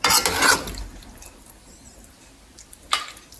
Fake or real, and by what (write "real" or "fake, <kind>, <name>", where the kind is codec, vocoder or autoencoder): real